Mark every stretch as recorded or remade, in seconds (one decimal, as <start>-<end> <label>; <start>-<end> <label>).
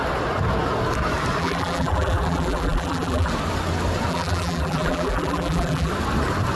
0.0-1.4 recorded; 1.4-3.3 remade; 3.3-4.1 recorded; 4.1-5.9 remade; 5.9-6.6 recorded